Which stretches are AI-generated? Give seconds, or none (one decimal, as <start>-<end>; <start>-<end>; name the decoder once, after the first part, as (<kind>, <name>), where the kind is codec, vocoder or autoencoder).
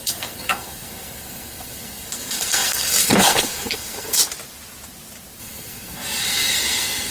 0.0-4.2 (codec, SNAC); 5.4-7.1